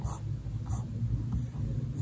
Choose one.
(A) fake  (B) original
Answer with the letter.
B